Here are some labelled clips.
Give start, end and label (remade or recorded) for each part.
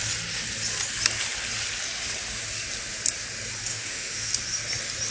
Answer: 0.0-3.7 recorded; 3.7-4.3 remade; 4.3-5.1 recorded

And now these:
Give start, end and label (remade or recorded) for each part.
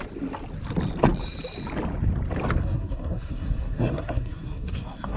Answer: 0.0-2.6 recorded; 2.6-5.2 remade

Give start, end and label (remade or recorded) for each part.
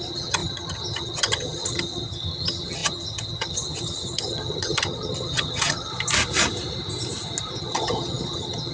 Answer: 0.0-5.9 remade; 5.9-7.6 recorded; 7.6-8.7 remade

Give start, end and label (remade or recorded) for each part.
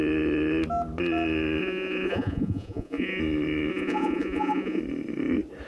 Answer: 0.0-1.6 recorded; 1.6-3.2 remade; 3.2-3.7 recorded; 3.7-4.8 remade; 4.8-5.7 recorded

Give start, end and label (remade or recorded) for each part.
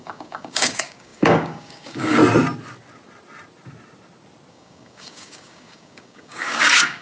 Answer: 0.0-2.2 remade; 2.2-4.5 recorded; 4.5-7.0 remade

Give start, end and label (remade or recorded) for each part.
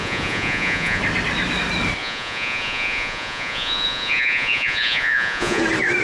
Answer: 0.0-1.0 remade; 1.0-2.0 recorded; 2.0-5.6 remade; 5.6-6.0 recorded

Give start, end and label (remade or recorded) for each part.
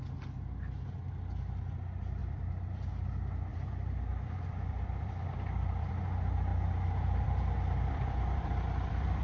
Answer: 0.0-2.2 recorded; 2.2-2.9 remade; 2.9-3.5 recorded; 3.5-5.9 remade; 5.9-6.5 recorded; 6.5-9.2 remade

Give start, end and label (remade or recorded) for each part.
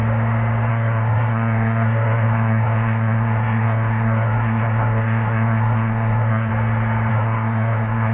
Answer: 0.0-0.7 recorded; 0.7-6.5 remade; 6.5-7.1 recorded; 7.1-8.1 remade